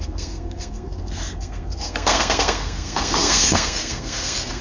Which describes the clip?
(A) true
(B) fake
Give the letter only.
B